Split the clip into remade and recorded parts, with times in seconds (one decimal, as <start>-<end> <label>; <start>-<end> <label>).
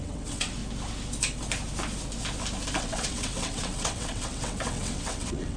0.0-0.6 remade; 0.6-2.8 recorded; 2.8-5.6 remade